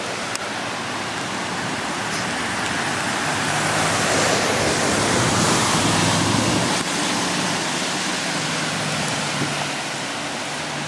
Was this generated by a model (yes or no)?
no